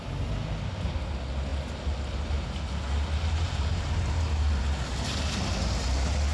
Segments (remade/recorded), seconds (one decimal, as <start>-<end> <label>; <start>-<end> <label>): 0.0-6.3 recorded